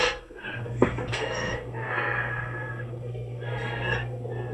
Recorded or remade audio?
remade